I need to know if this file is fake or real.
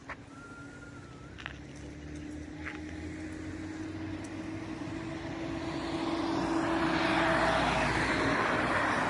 real